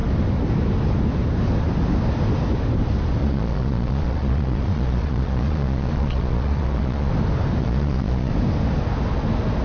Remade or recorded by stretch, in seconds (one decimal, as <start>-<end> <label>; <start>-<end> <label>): 0.0-3.2 recorded; 3.2-7.1 remade; 7.1-7.6 recorded; 7.6-8.3 remade; 8.3-9.6 recorded